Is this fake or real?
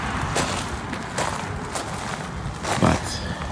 real